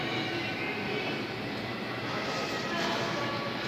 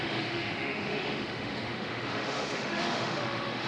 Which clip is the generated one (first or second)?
second